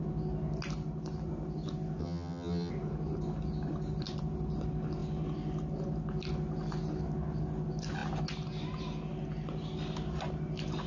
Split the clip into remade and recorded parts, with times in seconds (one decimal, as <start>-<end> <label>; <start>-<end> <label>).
0.0-2.0 recorded; 2.0-2.7 remade; 2.7-10.9 recorded